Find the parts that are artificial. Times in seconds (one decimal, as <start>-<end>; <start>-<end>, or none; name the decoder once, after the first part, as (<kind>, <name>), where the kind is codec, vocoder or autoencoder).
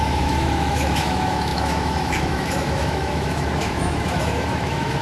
0.0-5.0 (autoencoder, DAC-VAE)